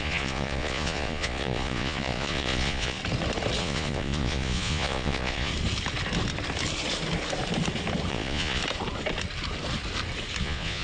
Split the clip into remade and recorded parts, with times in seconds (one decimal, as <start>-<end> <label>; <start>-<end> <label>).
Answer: 0.0-3.0 remade; 3.0-3.6 recorded; 3.6-5.5 remade; 5.5-8.1 recorded; 8.1-8.6 remade; 8.6-10.4 recorded; 10.4-10.8 remade